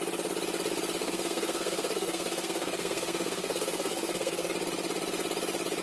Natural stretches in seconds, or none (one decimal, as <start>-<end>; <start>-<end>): 0.0-1.0; 4.5-5.8